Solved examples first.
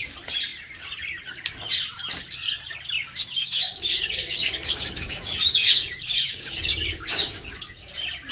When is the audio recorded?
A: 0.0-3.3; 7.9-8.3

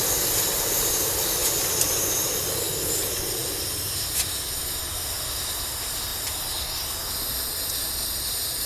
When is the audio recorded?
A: 0.0-8.7

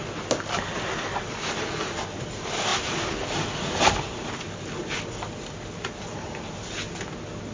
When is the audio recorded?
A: 0.0-7.5

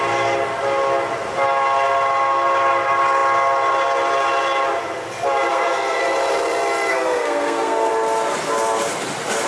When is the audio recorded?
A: 0.0-5.5; 6.0-6.9; 7.9-9.5

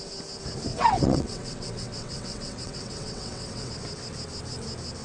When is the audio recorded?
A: 0.0-0.7; 3.7-5.0

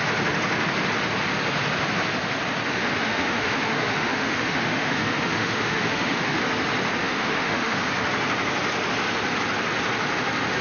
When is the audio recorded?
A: 0.0-2.7; 6.4-7.0; 7.8-10.6

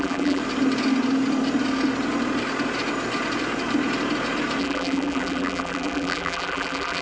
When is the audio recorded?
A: 0.4-4.6

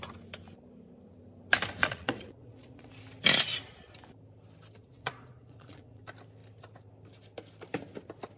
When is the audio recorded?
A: 0.0-1.8; 2.9-4.8; 6.0-8.4